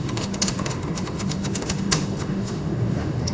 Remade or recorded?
remade